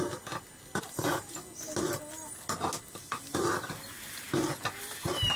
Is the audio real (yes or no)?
yes